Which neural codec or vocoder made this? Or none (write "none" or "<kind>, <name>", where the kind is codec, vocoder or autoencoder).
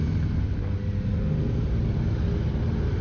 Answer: none